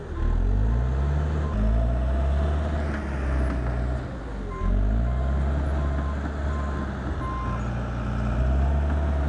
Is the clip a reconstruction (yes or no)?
no